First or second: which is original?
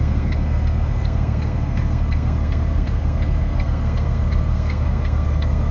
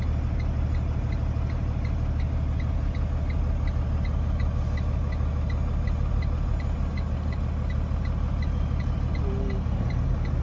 second